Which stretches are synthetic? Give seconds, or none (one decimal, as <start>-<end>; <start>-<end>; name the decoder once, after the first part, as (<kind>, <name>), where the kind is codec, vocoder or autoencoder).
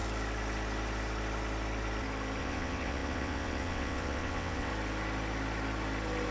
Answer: 2.4-4.7 (vocoder, WaveNeXt)